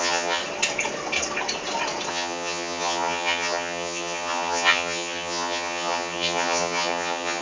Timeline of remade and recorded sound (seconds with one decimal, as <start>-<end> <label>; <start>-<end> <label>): 0.0-0.4 remade; 0.4-2.1 recorded; 2.1-7.4 remade